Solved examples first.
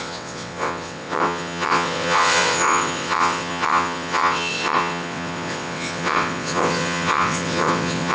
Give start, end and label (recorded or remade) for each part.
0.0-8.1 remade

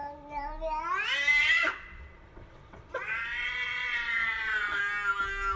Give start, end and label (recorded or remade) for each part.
0.0-1.4 recorded; 1.4-4.8 remade; 4.8-5.6 recorded

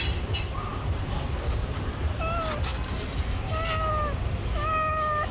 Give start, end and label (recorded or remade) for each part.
0.0-5.3 recorded

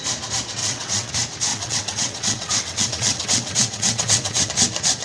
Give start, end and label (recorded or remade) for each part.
0.0-0.6 recorded; 0.6-1.1 remade; 1.1-1.5 recorded; 1.5-4.5 remade; 4.5-5.0 recorded

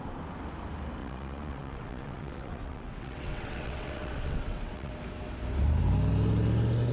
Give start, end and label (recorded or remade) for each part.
0.0-1.0 recorded; 1.0-4.9 remade; 4.9-6.9 recorded

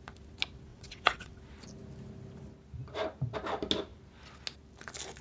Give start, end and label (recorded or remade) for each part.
0.0-0.7 recorded; 0.7-1.4 remade; 1.4-5.2 recorded

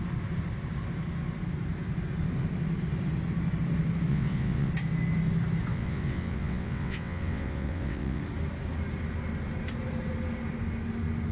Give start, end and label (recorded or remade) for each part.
0.0-4.1 recorded; 4.1-4.7 remade; 4.7-5.7 recorded; 5.7-8.2 remade; 8.2-11.3 recorded

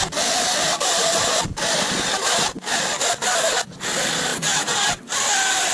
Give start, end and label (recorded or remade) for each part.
0.0-4.3 recorded; 4.3-5.1 remade; 5.1-5.7 recorded